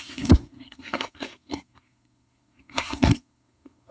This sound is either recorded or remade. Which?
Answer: remade